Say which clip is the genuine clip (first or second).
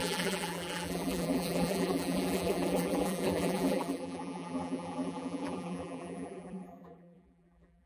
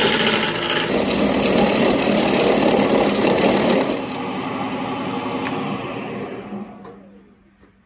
second